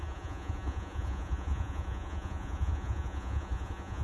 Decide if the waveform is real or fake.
fake